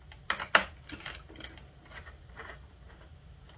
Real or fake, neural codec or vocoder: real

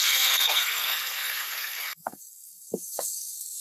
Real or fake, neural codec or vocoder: fake, codec, SNAC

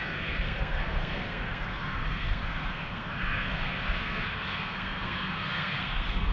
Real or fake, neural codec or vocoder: fake, codec, SNAC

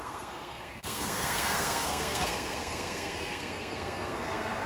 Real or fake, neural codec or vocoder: fake, codec, SNAC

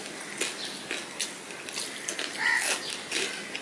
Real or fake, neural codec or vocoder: real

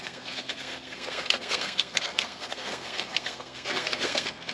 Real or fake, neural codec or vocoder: fake, codec, SNAC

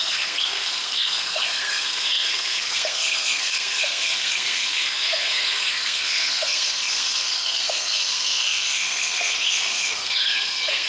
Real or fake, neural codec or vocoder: fake, codec, SNAC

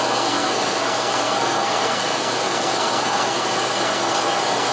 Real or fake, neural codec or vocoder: fake, codec, SNAC